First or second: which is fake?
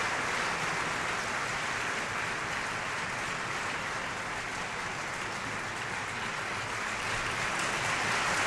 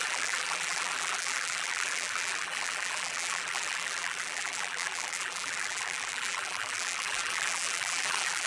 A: second